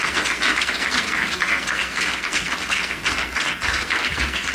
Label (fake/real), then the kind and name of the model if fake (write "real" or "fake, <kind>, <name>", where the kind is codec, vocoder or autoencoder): fake, codec, SNAC